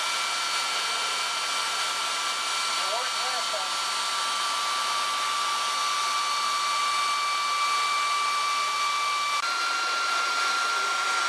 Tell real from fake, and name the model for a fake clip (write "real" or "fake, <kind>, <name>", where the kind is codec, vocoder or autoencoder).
real